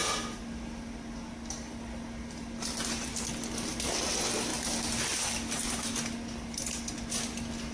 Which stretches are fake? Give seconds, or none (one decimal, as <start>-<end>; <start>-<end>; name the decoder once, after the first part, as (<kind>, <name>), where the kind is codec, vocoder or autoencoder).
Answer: none